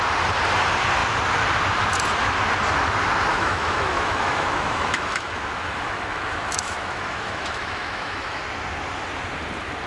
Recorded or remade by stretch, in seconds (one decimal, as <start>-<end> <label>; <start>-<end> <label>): 0.0-3.3 recorded; 3.3-8.4 remade; 8.4-9.9 recorded